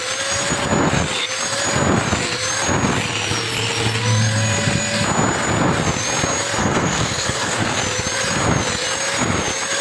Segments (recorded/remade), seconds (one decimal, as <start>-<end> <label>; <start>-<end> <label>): 0.0-6.6 recorded; 6.6-7.8 remade; 7.8-9.8 recorded